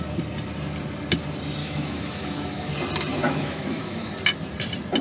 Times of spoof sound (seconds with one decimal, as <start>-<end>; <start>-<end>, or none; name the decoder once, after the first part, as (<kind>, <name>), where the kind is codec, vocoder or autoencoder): 1.6-2.7 (autoencoder, DAC-VAE); 3.1-4.1